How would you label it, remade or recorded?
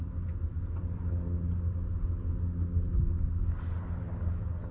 recorded